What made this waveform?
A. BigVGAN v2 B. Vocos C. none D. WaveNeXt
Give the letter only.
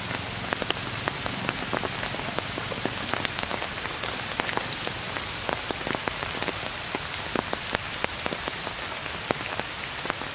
C